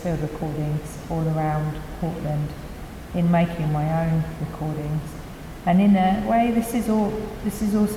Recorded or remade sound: recorded